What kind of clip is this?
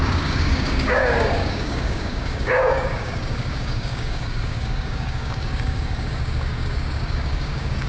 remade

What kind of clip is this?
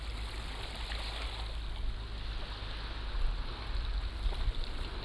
recorded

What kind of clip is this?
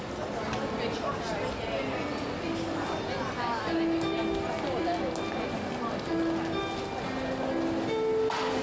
recorded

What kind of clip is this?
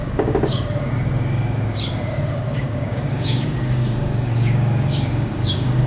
remade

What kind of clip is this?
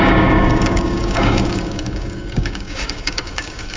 remade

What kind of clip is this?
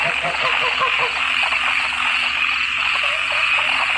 recorded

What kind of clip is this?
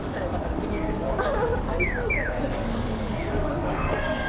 remade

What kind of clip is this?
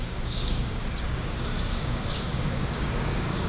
remade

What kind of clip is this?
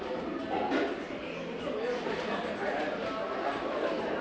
recorded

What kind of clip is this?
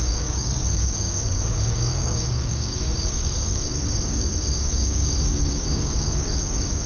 remade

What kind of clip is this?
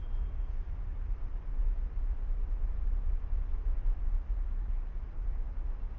recorded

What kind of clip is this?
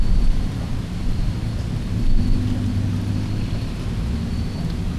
recorded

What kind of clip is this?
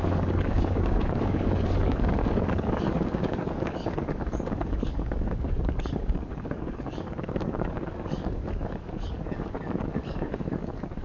remade